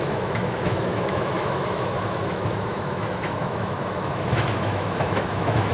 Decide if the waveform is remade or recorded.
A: remade